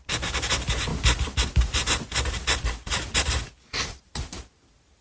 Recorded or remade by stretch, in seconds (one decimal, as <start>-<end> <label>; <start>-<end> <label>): 0.0-0.9 remade; 0.9-3.8 recorded; 3.8-5.0 remade